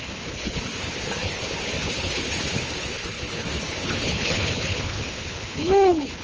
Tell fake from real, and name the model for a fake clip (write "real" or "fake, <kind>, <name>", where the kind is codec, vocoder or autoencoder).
fake, codec, HILCodec